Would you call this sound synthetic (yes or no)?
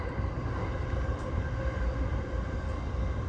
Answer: no